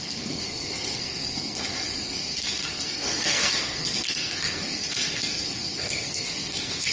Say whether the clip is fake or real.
fake